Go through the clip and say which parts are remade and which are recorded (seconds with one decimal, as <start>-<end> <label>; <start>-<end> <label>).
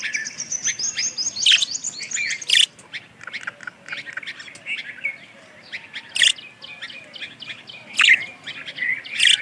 0.0-9.4 recorded